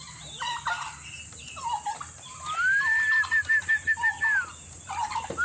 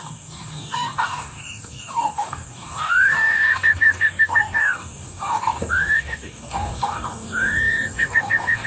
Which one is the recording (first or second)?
first